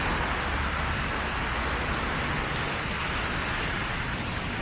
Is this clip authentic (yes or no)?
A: yes